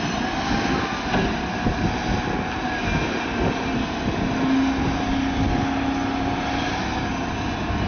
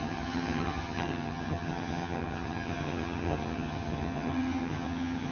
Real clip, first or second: first